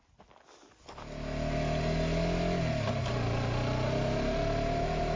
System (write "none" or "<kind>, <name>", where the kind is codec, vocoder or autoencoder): none